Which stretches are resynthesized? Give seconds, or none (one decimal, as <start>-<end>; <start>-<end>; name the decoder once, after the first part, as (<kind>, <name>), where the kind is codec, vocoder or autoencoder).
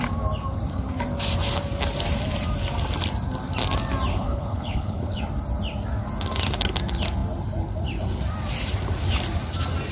4.1-5.2 (codec, HILCodec)